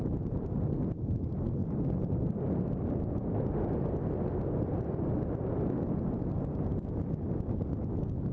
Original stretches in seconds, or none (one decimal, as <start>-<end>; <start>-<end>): 0.0-8.3